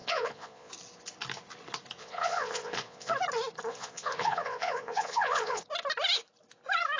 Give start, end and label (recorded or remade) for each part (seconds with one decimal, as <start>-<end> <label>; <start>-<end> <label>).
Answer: 0.0-0.7 remade; 0.7-2.0 recorded; 2.0-3.1 remade; 3.1-3.7 recorded; 3.7-5.6 remade; 5.6-7.0 recorded